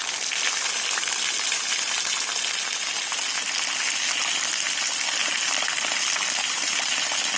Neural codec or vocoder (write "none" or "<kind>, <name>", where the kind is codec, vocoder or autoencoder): none